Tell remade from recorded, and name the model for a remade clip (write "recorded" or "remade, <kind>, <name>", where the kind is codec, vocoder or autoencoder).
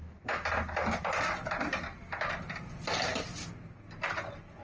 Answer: recorded